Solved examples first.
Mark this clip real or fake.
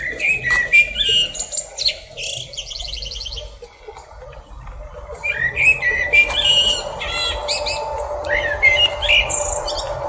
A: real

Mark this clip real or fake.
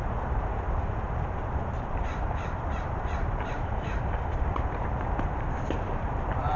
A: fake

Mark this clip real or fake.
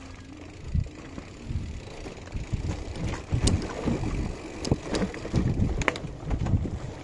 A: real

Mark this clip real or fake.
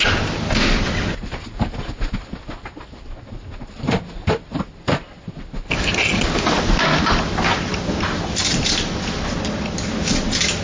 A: real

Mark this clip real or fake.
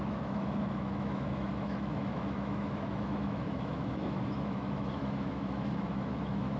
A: fake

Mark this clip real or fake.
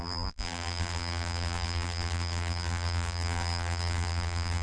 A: fake